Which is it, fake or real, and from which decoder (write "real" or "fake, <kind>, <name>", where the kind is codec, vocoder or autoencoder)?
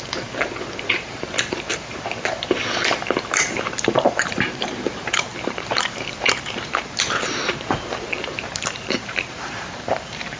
fake, vocoder, BigVGAN v2